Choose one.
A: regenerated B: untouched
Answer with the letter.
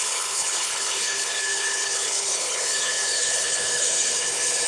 A